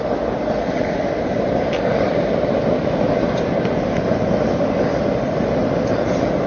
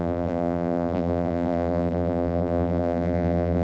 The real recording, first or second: first